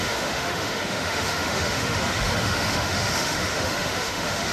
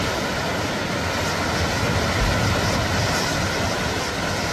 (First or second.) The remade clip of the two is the first